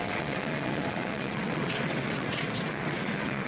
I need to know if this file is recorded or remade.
remade